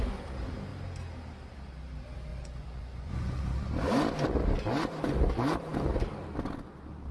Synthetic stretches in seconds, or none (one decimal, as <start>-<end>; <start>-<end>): 2.3-3.7